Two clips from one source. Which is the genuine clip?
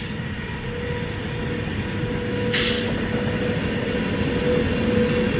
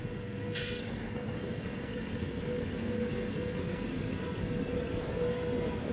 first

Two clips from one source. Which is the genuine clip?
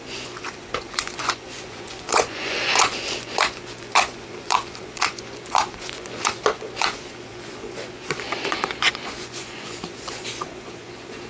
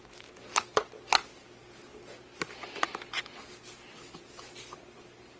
second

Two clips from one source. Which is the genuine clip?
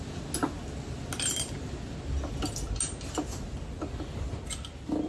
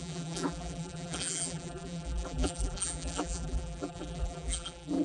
first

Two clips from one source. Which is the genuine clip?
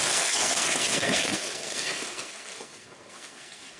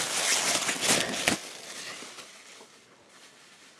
second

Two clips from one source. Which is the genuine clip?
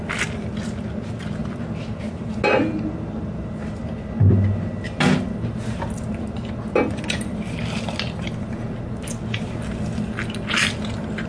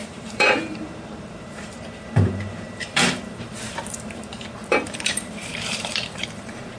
first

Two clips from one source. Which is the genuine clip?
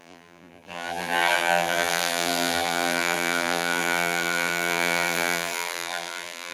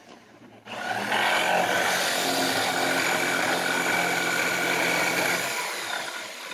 second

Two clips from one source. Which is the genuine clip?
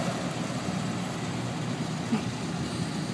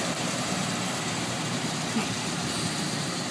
first